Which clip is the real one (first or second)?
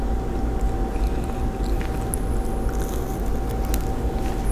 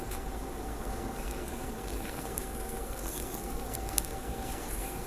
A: first